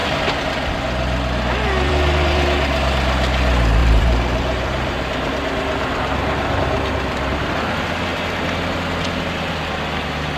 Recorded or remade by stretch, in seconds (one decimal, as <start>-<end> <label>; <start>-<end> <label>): 0.0-3.8 recorded; 3.8-7.7 remade; 7.7-10.4 recorded